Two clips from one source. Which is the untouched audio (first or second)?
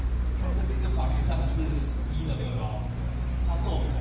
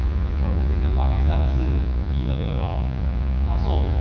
first